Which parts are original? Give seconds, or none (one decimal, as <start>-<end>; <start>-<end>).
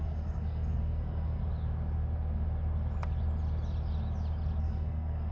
1.4-4.6